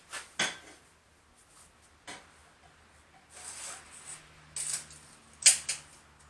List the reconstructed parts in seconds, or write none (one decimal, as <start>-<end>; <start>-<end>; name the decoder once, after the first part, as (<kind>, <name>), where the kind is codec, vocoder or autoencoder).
none